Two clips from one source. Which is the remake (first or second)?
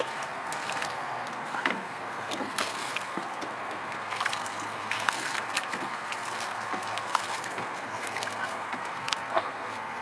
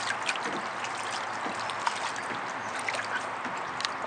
first